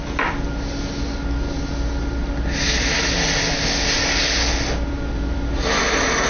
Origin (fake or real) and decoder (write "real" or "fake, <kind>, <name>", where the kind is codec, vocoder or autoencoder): real